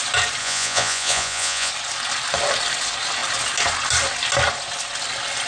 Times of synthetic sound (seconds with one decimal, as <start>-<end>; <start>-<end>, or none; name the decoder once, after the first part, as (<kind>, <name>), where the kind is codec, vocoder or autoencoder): 0.4-1.7 (vocoder, Vocos)